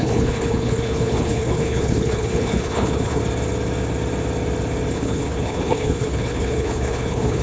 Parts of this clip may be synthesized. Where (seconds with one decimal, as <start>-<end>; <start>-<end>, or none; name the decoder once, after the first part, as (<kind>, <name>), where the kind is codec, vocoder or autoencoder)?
0.0-3.2 (codec, HILCodec); 4.9-7.4